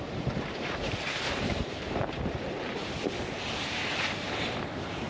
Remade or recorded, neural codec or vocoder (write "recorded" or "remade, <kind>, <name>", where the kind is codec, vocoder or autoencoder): remade, vocoder, BigVGAN v2